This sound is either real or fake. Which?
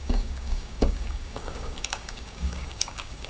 fake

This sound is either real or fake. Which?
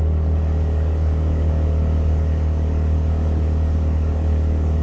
fake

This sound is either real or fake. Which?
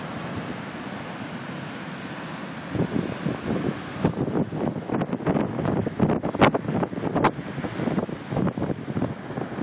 real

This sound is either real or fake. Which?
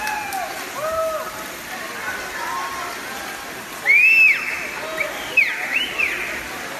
real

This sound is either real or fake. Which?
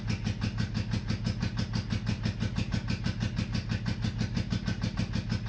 real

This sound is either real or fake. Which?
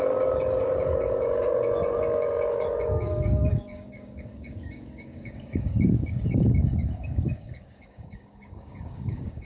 fake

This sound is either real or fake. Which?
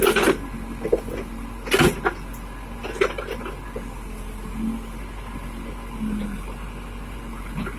real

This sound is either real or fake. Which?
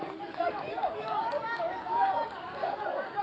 fake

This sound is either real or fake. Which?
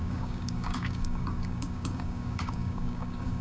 fake